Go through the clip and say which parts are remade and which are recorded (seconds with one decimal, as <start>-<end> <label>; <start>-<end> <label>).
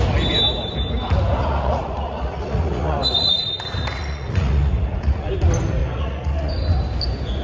0.0-1.4 recorded; 1.4-5.3 remade; 5.3-5.8 recorded; 5.8-6.5 remade; 6.5-7.4 recorded